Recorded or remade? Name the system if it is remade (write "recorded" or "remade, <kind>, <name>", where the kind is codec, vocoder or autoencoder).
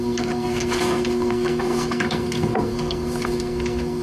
remade, codec, SNAC